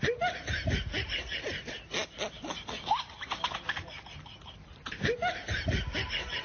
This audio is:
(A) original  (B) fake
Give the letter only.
A